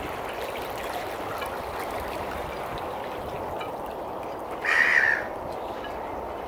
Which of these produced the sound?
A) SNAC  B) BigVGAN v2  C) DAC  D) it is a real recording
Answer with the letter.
D